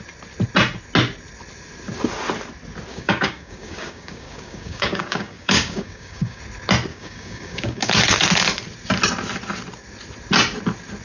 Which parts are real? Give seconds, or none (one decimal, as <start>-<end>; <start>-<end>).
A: 0.0-2.9; 6.4-6.9; 7.9-11.0